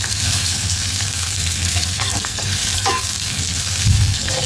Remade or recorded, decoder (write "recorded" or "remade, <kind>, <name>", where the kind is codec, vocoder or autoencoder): remade, codec, SNAC